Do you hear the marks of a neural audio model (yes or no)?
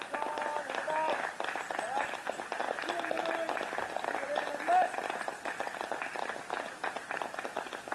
no